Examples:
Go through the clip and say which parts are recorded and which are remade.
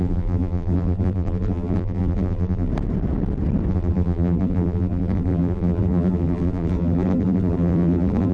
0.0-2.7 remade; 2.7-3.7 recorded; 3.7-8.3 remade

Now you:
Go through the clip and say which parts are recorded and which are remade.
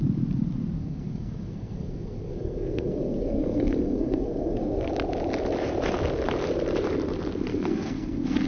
0.0-0.8 recorded; 0.8-4.9 remade; 4.9-7.5 recorded; 7.5-8.5 remade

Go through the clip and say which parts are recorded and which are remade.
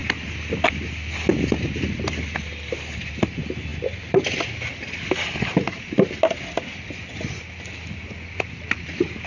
0.0-9.3 recorded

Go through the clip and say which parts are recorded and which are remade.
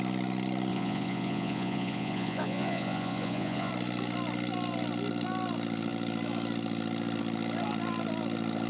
0.0-0.7 recorded; 0.7-3.7 remade; 3.7-8.7 recorded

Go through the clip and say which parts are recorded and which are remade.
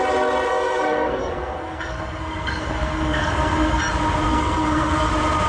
0.0-0.5 recorded; 0.5-3.8 remade; 3.8-4.3 recorded; 4.3-5.1 remade; 5.1-5.5 recorded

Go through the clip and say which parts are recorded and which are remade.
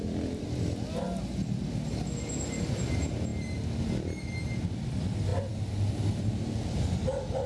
0.0-7.5 recorded